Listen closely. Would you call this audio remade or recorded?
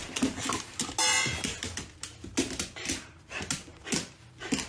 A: recorded